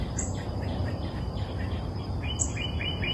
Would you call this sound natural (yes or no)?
no